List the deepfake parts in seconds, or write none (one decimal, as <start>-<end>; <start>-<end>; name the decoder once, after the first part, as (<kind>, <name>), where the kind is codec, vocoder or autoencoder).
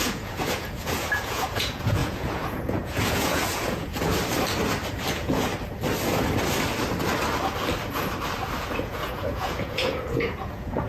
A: 0.0-3.9 (vocoder, Vocos); 5.1-5.5; 8.6-10.9